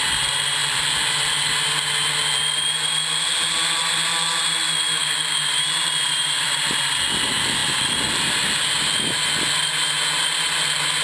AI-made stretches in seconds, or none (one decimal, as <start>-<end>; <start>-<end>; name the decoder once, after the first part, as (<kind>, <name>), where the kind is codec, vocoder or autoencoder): 0.6-1.5 (vocoder, BigVGAN v2); 5.0-6.8; 7.6-8.3